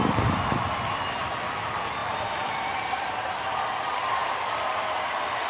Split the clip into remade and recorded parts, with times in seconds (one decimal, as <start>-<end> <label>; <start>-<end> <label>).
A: 0.0-5.5 remade